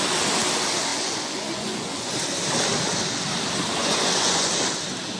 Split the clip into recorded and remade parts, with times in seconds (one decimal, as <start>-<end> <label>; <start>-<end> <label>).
0.0-0.9 recorded; 0.9-2.1 remade; 2.1-3.8 recorded; 3.8-4.5 remade; 4.5-5.2 recorded